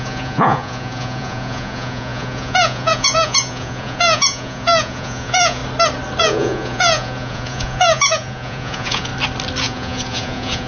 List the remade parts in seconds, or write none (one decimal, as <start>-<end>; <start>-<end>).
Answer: 0.0-5.6; 6.2-9.1; 9.6-10.7